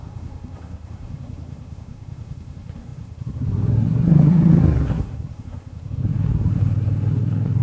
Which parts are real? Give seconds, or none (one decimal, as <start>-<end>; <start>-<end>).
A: none